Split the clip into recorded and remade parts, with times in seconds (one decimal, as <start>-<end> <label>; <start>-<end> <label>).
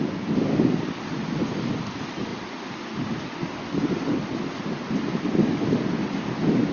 0.0-6.7 recorded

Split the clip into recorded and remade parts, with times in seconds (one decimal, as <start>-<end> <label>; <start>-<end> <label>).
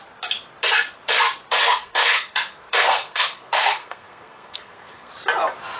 0.0-1.6 recorded; 1.6-5.1 remade; 5.1-5.8 recorded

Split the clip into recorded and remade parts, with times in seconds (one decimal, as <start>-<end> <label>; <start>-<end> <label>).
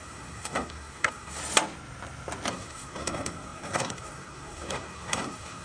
0.0-1.4 remade; 1.4-2.5 recorded; 2.5-5.6 remade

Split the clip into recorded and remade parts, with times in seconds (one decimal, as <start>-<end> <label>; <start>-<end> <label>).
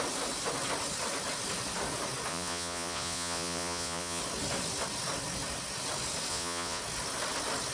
0.0-2.3 recorded; 2.3-4.2 remade; 4.2-6.3 recorded; 6.3-6.8 remade; 6.8-7.7 recorded